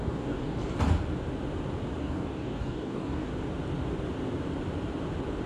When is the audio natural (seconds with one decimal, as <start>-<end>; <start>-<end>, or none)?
0.6-2.0; 3.3-5.5